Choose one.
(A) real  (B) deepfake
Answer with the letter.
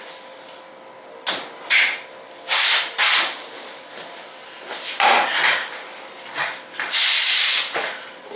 A